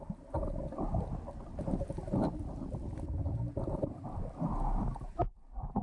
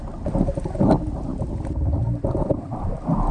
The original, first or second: second